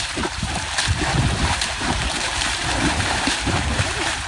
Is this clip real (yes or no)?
no